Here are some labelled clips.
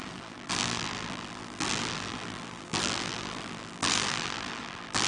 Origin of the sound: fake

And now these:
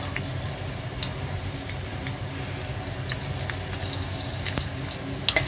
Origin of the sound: real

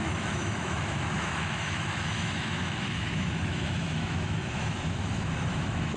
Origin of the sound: fake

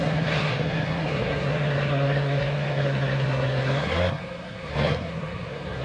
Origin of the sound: fake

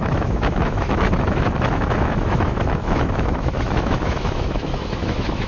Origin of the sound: fake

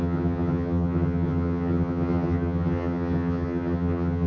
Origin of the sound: fake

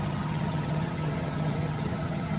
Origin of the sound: fake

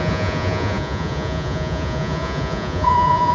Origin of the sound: fake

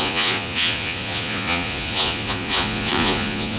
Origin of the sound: fake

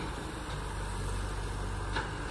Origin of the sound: real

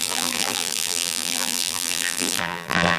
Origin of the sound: fake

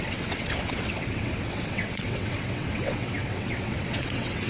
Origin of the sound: fake